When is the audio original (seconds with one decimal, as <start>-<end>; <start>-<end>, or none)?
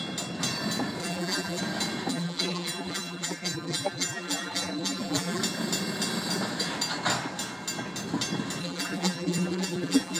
0.0-1.0; 1.6-2.1; 5.4-8.6